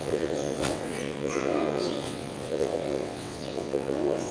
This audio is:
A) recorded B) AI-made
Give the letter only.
B